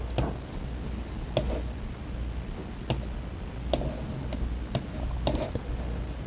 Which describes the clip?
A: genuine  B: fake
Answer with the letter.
A